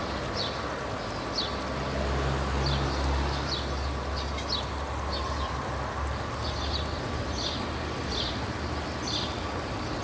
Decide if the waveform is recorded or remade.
recorded